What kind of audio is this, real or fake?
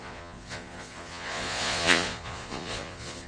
fake